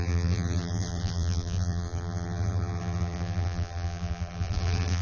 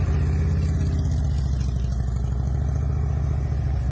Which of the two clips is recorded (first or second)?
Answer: second